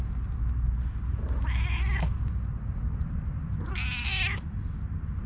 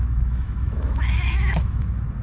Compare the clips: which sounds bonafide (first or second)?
first